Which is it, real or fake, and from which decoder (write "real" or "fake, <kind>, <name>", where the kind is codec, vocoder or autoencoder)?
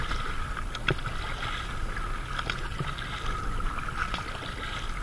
real